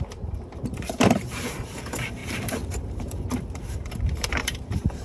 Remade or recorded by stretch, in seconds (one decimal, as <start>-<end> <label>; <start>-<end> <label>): 0.0-5.0 remade